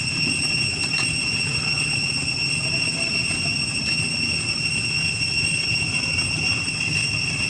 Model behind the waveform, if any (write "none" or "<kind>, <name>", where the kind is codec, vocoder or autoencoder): none